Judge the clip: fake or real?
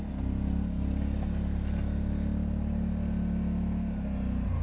real